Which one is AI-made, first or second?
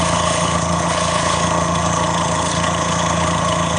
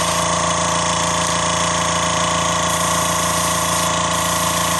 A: first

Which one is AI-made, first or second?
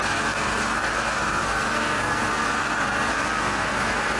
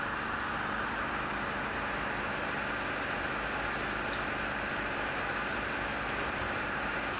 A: first